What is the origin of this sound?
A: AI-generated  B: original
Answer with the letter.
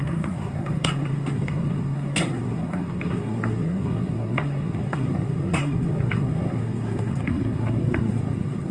A